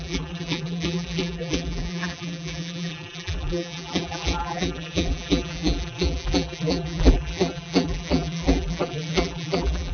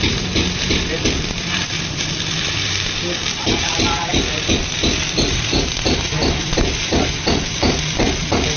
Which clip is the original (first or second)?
second